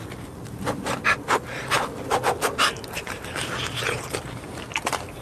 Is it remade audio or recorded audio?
recorded